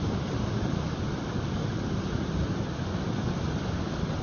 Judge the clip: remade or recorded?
recorded